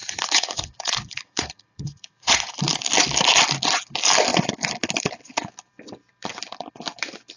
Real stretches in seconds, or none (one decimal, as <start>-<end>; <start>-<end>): 2.5-7.4